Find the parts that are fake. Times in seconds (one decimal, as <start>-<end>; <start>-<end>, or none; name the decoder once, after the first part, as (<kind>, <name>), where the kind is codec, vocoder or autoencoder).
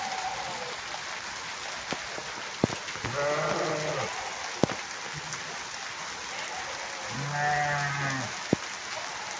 none